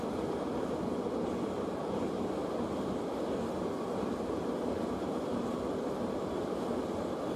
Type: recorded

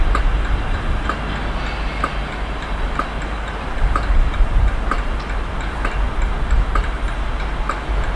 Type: recorded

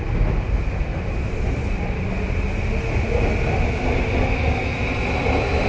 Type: recorded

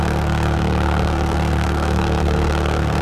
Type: remade